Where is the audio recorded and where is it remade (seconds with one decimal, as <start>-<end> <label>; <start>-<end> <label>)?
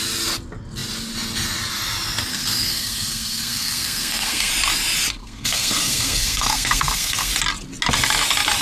0.0-2.3 recorded; 2.3-4.5 remade; 4.5-5.2 recorded; 5.2-7.3 remade; 7.3-8.6 recorded